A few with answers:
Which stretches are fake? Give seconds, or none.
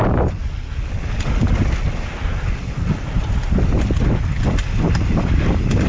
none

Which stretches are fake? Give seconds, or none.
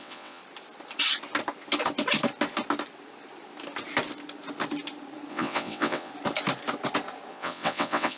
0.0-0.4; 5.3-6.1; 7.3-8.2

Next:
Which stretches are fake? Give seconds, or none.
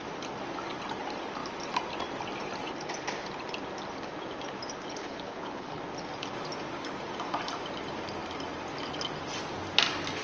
5.0-5.8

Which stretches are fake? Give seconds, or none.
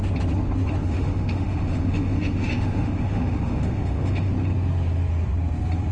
0.8-4.3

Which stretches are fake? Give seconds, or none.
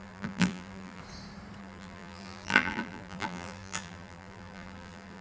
0.0-1.0; 1.6-5.2